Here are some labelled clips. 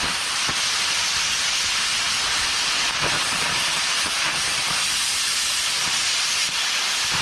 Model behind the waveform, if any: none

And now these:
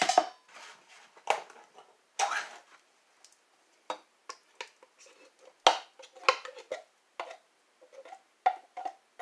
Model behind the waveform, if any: none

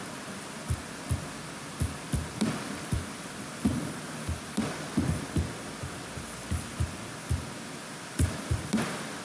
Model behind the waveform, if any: vocoder, BigVGAN v2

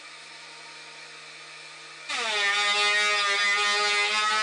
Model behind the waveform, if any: none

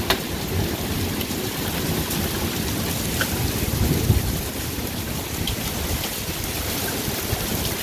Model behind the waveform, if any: vocoder, BigVGAN v2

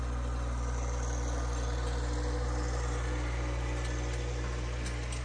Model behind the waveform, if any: none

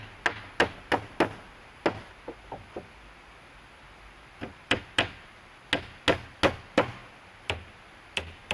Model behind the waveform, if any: none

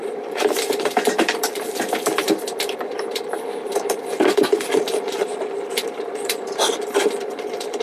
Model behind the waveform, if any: vocoder, BigVGAN v2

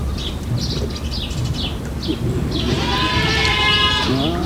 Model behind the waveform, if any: none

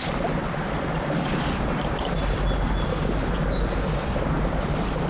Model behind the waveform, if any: vocoder, BigVGAN v2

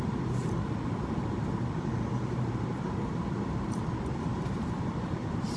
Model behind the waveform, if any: vocoder, BigVGAN v2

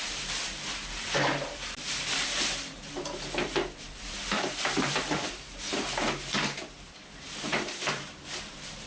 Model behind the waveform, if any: vocoder, BigVGAN v2